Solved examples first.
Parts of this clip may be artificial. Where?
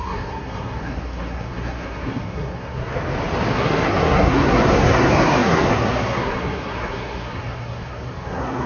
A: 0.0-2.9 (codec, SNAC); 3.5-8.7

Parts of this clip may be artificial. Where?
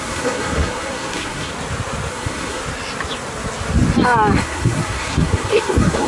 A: 0.0-1.5 (codec, SNAC); 2.1-2.6; 4.4-6.1